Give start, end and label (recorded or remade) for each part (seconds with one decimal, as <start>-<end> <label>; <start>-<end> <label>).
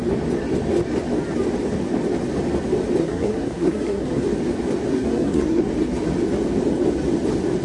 0.0-3.0 recorded; 3.0-4.2 remade; 4.2-4.9 recorded; 4.9-5.6 remade; 5.6-7.6 recorded